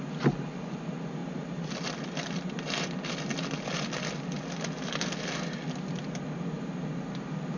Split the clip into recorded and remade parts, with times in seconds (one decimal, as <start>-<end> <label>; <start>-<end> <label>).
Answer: 0.0-7.6 recorded